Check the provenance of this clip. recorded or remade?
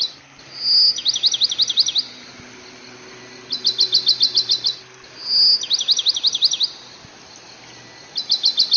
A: recorded